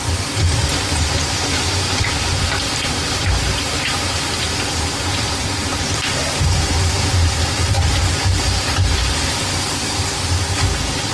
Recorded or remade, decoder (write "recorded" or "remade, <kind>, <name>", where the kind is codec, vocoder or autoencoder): remade, vocoder, BigVGAN v2